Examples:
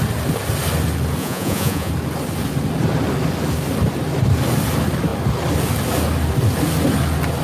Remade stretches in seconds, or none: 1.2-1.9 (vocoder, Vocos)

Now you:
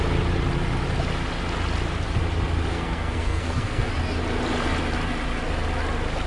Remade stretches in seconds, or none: 2.7-3.9 (codec, SNAC)

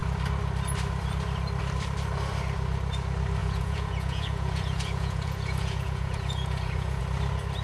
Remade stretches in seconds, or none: 3.4-7.0 (vocoder, Vocos)